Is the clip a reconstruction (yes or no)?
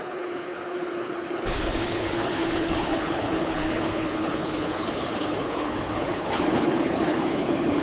yes